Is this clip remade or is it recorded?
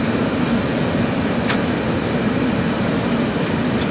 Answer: recorded